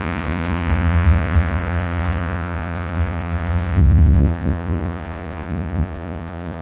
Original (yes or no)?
no